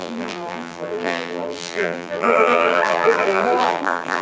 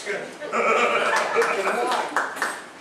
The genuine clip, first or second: second